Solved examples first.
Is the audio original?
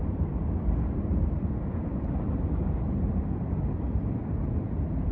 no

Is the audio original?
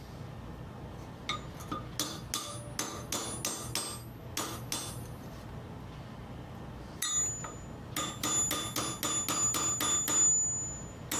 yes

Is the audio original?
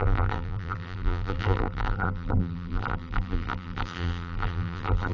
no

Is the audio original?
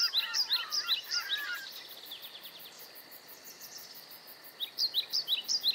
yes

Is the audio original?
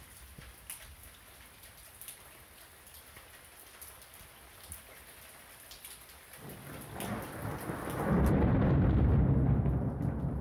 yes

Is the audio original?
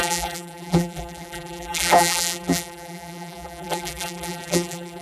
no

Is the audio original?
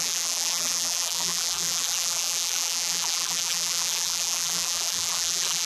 no